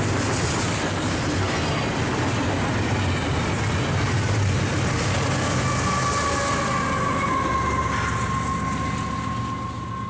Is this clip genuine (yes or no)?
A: yes